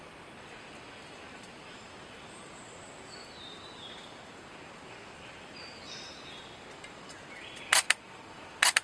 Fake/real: real